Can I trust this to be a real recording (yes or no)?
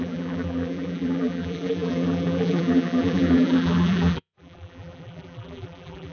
no